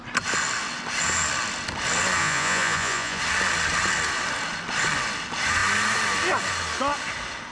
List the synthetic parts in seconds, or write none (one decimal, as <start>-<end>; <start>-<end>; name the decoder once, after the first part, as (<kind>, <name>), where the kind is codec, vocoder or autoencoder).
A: 2.2-3.2 (vocoder, Vocos)